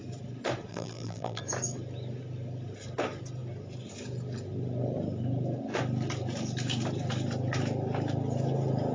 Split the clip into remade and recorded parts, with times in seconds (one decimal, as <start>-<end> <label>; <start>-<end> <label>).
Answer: 0.0-0.7 recorded; 0.7-1.4 remade; 1.4-8.9 recorded